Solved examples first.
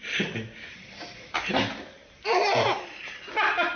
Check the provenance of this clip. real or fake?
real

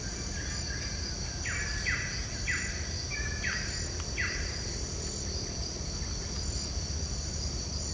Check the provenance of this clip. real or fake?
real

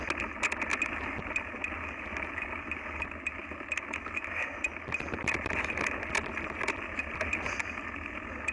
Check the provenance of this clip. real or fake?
real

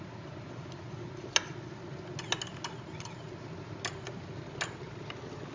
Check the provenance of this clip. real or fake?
real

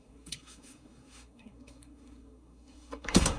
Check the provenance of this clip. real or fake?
fake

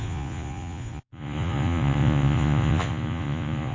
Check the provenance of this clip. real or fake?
fake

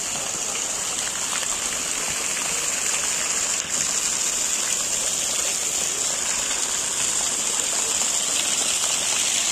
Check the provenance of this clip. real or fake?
real